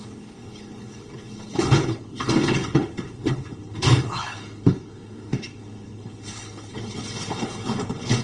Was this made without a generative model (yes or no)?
no